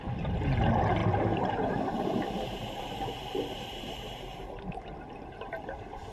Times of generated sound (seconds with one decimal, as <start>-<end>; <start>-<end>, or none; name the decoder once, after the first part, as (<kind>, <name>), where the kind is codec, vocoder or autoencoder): 1.0-4.6 (vocoder, BigVGAN v2)